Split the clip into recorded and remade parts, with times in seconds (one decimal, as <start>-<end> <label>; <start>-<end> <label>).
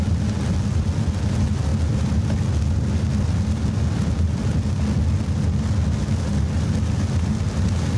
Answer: 0.0-8.0 recorded